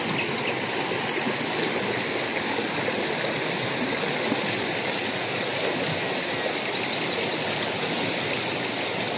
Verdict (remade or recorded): recorded